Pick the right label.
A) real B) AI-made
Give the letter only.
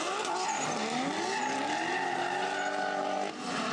A